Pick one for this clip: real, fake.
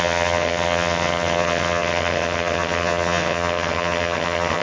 fake